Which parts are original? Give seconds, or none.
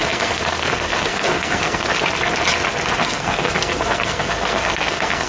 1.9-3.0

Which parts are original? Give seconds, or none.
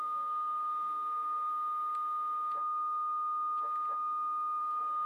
1.5-4.6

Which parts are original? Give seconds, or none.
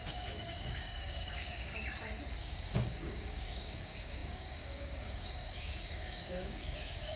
1.7-2.4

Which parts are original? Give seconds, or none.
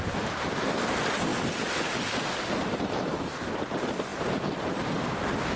0.0-5.6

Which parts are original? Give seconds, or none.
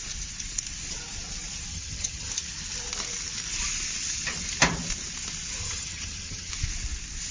0.0-1.7; 2.3-5.6; 6.5-7.3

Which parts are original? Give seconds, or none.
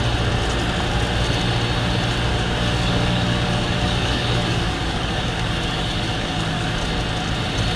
0.0-2.3; 6.7-7.8